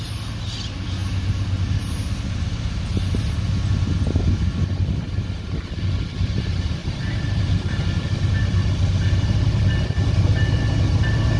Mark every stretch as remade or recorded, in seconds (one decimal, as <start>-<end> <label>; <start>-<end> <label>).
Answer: 0.0-6.8 recorded; 6.8-7.8 remade; 7.8-11.4 recorded